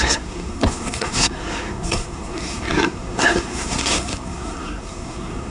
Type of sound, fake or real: fake